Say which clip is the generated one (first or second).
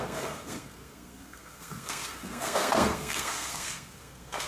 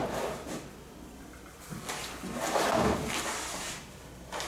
first